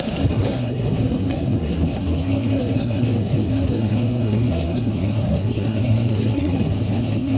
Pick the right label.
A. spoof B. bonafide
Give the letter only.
A